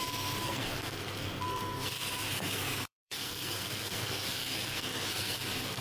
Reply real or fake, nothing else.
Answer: fake